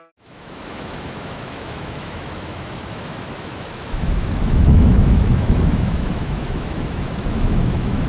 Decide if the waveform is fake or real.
fake